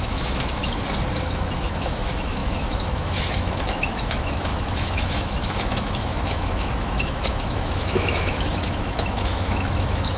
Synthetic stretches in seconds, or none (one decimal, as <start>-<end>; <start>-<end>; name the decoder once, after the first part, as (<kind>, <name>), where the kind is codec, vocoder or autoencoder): 0.0-0.6 (autoencoder, DAC-VAE); 1.2-10.2